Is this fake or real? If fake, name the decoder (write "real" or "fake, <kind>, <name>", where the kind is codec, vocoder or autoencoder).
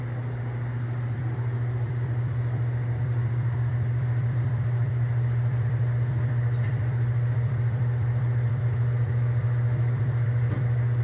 fake, vocoder, BigVGAN v2